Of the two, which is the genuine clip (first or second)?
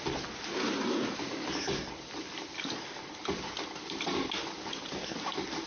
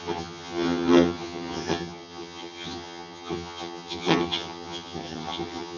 first